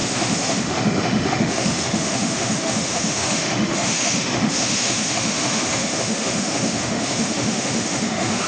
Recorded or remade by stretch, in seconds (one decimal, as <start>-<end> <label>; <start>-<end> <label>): 0.0-8.5 remade